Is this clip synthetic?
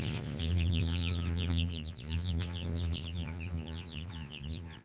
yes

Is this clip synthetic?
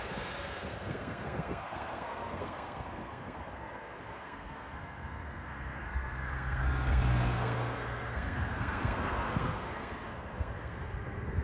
yes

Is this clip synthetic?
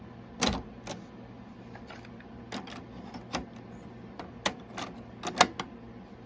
no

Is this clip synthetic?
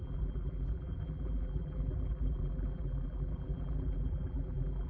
yes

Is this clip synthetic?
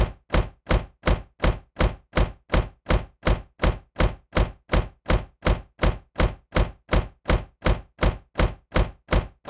no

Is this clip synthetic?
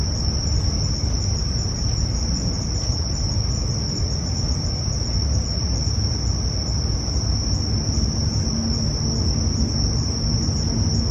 no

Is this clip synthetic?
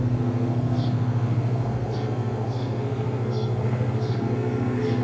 yes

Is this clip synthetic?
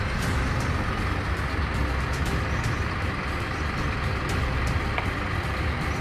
no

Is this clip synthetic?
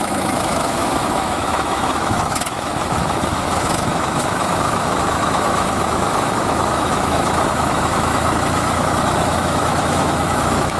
yes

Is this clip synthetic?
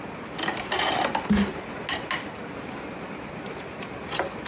no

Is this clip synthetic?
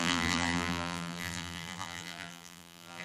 yes